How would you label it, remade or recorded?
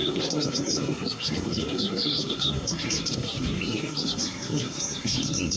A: remade